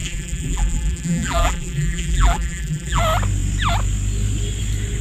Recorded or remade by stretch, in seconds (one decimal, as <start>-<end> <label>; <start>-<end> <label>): 0.0-3.0 remade; 3.0-5.0 recorded